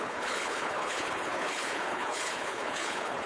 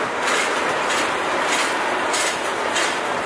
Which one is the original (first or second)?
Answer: second